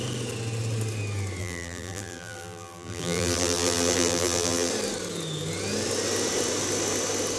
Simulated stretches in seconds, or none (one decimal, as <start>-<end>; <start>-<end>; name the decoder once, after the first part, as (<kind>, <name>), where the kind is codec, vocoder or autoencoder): 1.4-4.7 (vocoder, BigVGAN v2)